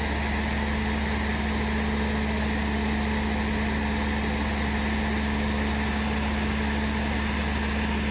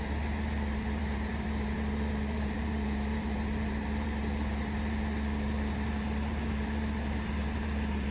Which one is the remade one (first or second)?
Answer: second